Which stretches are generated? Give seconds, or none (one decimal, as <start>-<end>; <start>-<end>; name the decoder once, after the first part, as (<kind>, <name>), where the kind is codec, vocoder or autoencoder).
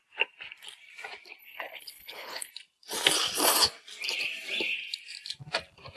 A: 1.4-2.5 (codec, HILCodec)